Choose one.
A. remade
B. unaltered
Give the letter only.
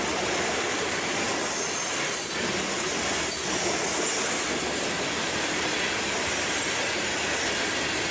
B